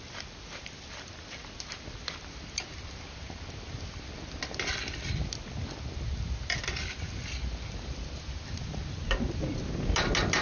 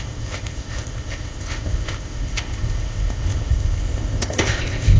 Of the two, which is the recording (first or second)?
first